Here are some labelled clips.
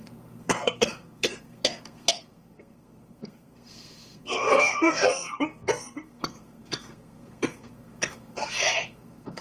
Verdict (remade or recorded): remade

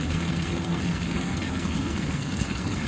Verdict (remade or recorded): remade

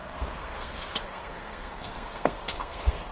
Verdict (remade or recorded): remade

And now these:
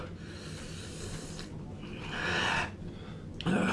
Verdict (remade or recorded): recorded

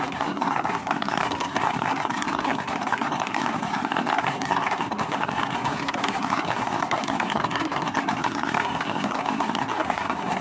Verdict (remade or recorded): remade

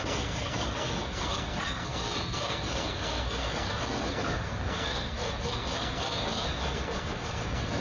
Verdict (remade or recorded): remade